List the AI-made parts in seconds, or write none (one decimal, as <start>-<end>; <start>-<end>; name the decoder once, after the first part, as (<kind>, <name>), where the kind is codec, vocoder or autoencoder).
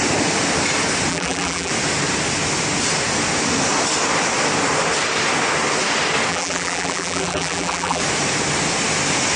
1.1-1.7 (vocoder, BigVGAN v2); 6.3-8.0